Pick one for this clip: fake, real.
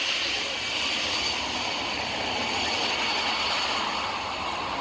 real